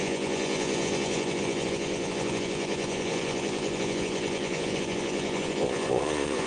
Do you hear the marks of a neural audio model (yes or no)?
yes